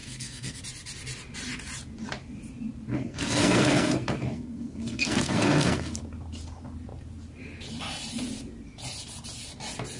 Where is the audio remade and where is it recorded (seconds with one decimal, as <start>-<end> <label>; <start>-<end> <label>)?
0.0-0.6 remade; 0.6-2.9 recorded; 2.9-6.0 remade; 6.0-10.0 recorded